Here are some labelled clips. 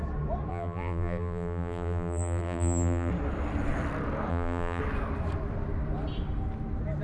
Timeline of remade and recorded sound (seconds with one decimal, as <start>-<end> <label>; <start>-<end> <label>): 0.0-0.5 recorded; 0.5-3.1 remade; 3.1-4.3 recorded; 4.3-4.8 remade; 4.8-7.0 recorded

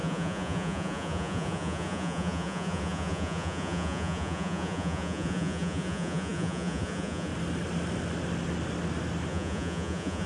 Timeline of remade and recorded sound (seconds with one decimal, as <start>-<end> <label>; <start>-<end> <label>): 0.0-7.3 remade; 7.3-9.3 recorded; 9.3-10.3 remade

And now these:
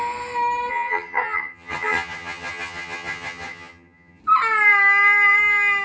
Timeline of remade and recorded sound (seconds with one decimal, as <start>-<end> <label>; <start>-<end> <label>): 0.0-0.7 recorded; 0.7-4.2 remade; 4.2-5.8 recorded

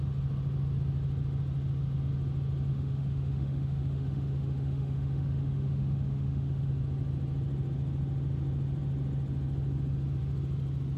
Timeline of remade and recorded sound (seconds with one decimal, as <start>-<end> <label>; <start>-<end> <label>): 0.0-2.7 recorded; 2.7-6.7 remade; 6.7-11.0 recorded

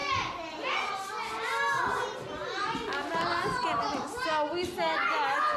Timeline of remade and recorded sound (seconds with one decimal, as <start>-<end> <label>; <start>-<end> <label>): 0.0-5.6 recorded

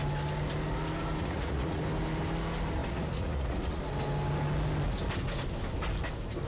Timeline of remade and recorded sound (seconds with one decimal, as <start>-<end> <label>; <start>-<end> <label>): 0.0-1.2 recorded; 1.2-1.8 remade; 1.8-2.8 recorded; 2.8-3.8 remade; 3.8-6.5 recorded

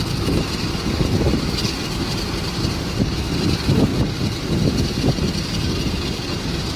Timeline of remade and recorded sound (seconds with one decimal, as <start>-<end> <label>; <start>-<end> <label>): 0.0-6.8 recorded

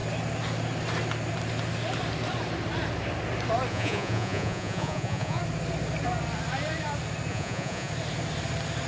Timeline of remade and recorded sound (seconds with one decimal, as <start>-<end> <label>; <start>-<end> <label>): 0.0-3.7 recorded; 3.7-5.4 remade; 5.4-7.3 recorded; 7.3-7.9 remade; 7.9-8.9 recorded